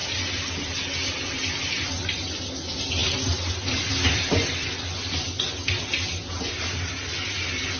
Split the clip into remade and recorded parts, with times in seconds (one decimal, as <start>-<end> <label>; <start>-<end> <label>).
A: 0.0-7.8 recorded